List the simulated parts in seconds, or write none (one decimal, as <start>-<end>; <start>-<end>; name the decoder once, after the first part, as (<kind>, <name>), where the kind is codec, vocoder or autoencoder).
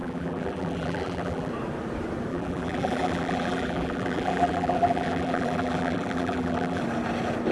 0.0-1.5 (vocoder, BigVGAN v2); 2.3-6.8